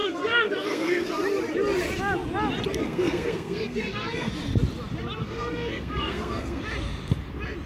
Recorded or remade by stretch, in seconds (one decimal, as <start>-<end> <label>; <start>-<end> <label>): 0.0-1.1 remade; 1.1-2.8 recorded; 2.8-4.3 remade; 4.3-5.2 recorded; 5.2-6.6 remade; 6.6-7.7 recorded